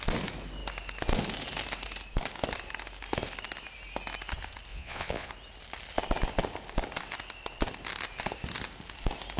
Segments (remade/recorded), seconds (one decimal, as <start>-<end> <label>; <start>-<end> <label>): 0.0-4.7 recorded; 4.7-5.3 remade; 5.3-9.4 recorded